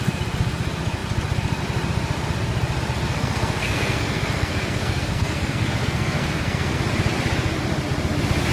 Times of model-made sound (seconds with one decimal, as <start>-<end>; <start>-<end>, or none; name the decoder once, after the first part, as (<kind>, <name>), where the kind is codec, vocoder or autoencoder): 3.1-6.8 (codec, SNAC)